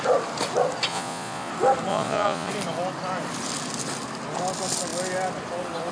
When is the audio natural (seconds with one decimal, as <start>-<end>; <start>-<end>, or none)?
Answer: 0.0-0.9; 1.5-1.9; 2.5-5.9